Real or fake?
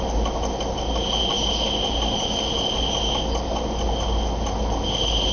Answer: real